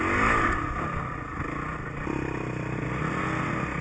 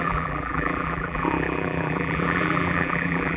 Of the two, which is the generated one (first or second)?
second